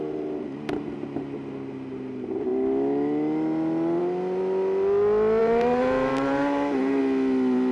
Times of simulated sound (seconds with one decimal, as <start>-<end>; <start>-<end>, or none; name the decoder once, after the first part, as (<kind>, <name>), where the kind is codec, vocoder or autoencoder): 5.4-7.0 (vocoder, BigVGAN v2)